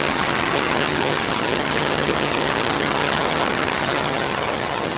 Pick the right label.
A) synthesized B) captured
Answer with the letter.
A